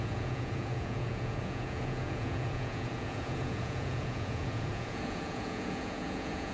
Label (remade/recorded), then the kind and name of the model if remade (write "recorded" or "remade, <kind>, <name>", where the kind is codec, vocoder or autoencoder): remade, vocoder, Vocos